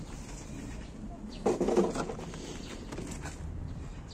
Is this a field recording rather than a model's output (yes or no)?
yes